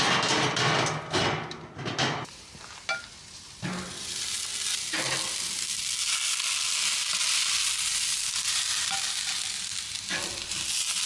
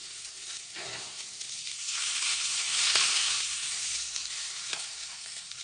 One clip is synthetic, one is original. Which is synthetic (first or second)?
second